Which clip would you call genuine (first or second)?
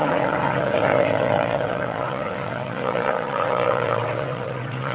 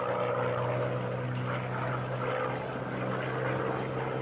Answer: second